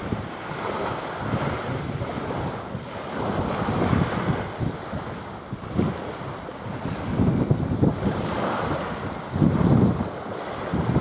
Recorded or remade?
recorded